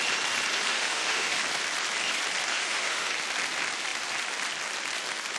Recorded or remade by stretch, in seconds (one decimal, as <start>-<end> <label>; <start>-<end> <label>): 0.0-0.7 recorded; 0.7-1.4 remade; 1.4-2.5 recorded; 2.5-3.1 remade; 3.1-5.4 recorded